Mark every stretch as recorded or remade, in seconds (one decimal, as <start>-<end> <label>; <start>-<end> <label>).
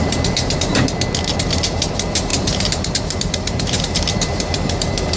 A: 0.0-0.7 remade; 0.7-1.3 recorded; 1.3-5.2 remade